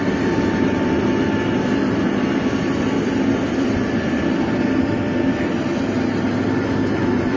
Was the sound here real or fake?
real